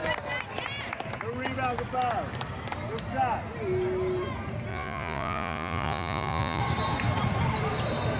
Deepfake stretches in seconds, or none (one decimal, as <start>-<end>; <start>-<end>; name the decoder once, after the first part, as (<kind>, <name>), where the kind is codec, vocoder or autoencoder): 4.7-6.6 (vocoder, Vocos)